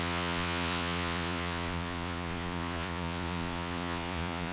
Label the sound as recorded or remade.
remade